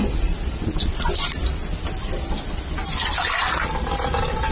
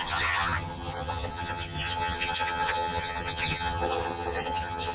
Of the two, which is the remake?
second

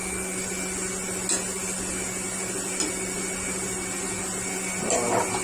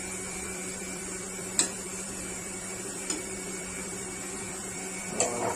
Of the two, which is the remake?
second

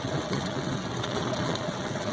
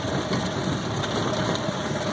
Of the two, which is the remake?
first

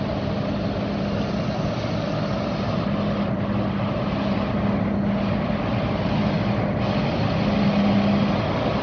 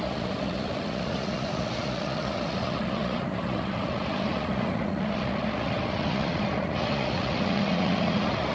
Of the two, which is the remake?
second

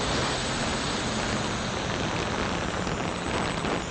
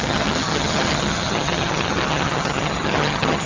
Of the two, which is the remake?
second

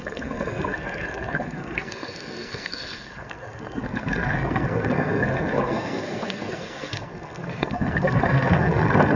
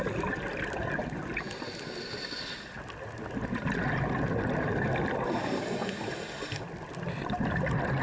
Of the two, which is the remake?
first